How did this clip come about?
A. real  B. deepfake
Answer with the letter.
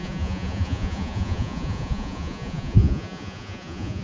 B